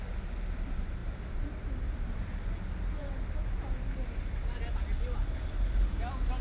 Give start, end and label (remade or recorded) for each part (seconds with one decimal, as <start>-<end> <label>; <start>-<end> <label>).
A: 0.0-1.0 recorded; 1.0-4.6 remade; 4.6-6.4 recorded